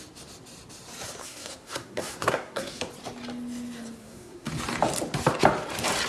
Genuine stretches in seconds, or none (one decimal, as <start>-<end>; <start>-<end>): 0.0-1.2; 2.9-4.0; 4.5-6.1